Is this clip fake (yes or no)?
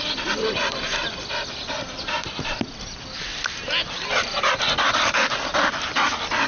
no